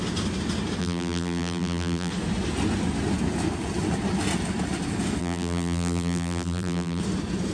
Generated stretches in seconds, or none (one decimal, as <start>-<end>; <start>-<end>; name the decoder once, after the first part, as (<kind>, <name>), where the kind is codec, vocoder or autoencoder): 0.8-2.1 (vocoder, BigVGAN v2); 5.2-7.0